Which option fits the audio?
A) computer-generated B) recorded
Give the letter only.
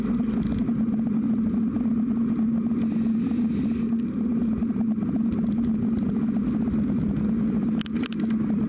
B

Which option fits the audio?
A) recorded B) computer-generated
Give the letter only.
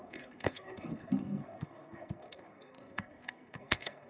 B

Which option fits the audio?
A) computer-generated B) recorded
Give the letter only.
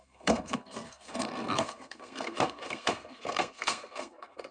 A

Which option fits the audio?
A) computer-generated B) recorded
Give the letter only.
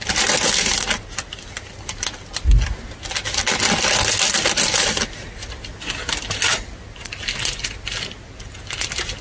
B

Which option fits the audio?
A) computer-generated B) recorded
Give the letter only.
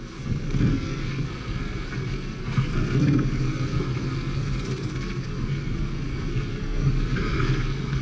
A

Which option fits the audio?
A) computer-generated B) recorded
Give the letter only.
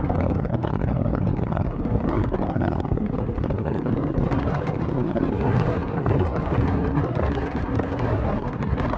A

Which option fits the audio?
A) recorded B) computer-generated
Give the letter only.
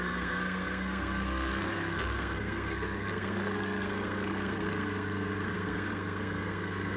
B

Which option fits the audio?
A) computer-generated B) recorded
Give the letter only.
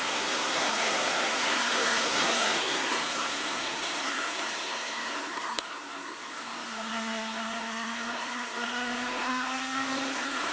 A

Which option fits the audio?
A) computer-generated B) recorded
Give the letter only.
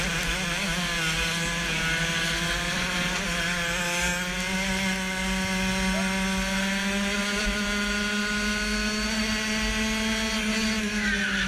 B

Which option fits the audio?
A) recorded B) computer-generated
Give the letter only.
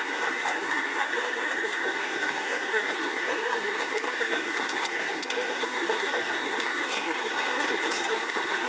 B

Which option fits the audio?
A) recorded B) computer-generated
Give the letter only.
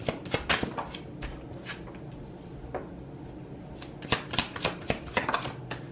A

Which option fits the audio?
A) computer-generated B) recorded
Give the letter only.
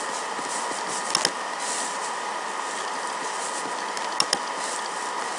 B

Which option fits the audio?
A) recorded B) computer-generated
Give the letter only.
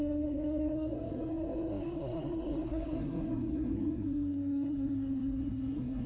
B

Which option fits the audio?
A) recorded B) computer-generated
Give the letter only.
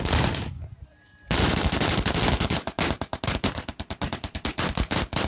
A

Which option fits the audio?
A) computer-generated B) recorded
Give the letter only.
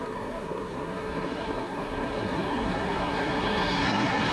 A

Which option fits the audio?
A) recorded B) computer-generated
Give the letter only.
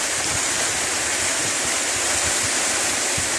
A